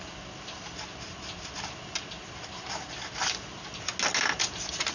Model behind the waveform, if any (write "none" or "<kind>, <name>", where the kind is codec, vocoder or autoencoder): none